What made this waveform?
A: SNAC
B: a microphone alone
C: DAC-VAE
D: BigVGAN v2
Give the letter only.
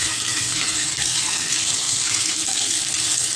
A